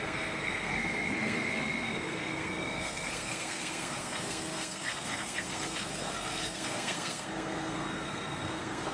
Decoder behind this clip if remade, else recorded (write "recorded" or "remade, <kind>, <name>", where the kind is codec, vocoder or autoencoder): remade, codec, SNAC